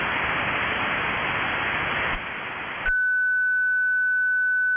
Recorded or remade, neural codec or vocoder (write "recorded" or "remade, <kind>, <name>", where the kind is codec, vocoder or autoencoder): recorded